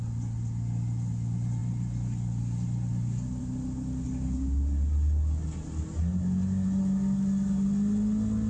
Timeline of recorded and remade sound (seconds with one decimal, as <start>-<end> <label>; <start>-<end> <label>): 0.0-8.5 recorded